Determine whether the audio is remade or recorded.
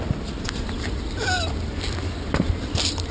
remade